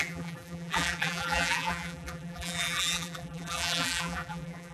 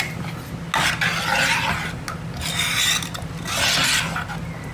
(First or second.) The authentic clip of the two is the second